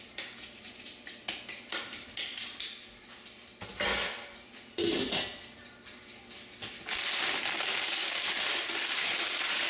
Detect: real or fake real